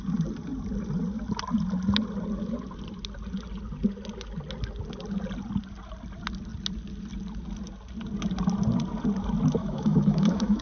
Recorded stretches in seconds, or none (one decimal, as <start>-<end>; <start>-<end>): 0.0-9.6